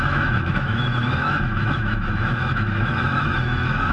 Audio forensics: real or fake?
fake